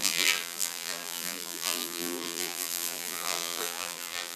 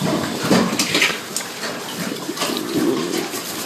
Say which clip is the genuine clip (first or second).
second